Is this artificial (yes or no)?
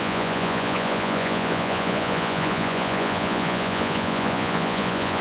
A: yes